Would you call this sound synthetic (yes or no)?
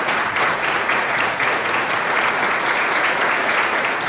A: yes